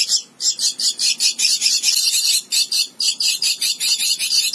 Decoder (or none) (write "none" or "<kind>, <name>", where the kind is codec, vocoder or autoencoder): none